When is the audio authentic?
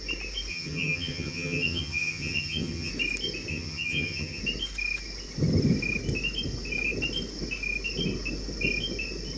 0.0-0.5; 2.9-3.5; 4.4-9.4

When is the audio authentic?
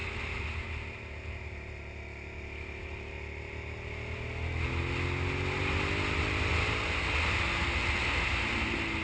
0.0-9.0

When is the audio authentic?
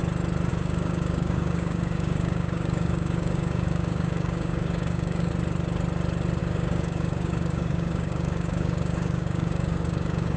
0.0-0.5; 5.3-6.4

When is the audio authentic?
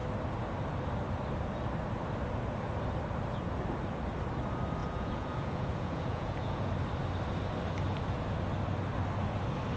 0.0-4.8; 6.7-9.8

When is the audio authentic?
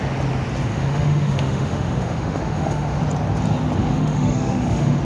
0.0-0.7; 3.0-3.8